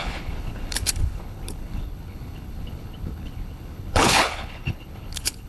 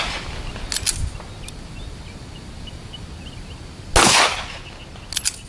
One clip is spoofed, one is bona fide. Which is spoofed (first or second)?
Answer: first